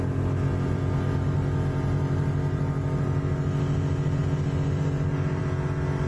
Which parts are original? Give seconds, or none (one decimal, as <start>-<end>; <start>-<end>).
0.0-6.1